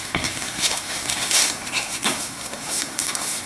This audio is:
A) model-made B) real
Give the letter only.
A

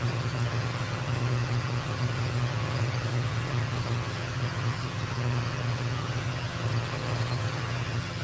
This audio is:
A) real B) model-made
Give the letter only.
B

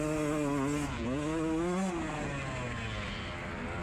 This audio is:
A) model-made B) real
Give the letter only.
B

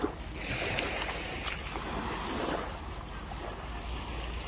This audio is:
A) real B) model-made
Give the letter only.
A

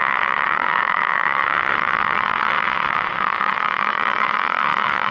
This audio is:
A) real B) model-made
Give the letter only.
B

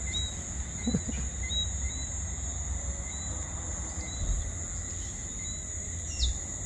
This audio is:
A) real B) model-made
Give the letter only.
A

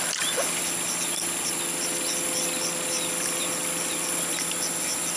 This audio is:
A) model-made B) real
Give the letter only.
B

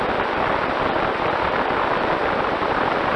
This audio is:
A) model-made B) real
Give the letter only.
B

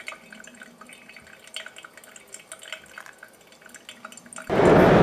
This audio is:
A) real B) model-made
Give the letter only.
A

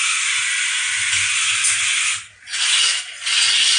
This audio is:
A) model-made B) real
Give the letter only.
B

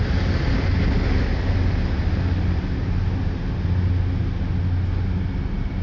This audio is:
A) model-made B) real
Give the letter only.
B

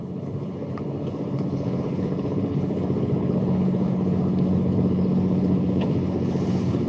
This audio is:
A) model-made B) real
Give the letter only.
A